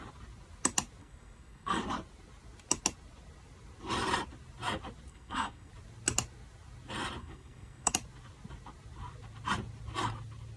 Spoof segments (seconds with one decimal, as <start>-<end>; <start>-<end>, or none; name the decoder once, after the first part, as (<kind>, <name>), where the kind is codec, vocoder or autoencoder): 1.0-1.8 (codec, SNAC); 5.1-5.7; 7.2-7.9